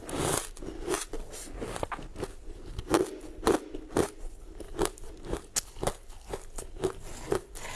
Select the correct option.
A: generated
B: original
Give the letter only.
B